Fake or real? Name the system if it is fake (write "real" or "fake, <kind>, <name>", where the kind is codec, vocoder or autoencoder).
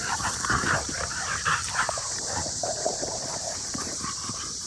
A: fake, vocoder, BigVGAN v2